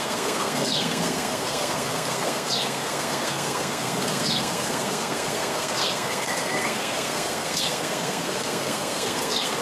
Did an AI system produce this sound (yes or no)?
yes